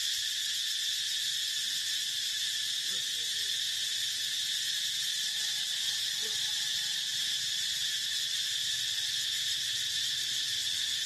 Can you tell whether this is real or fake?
real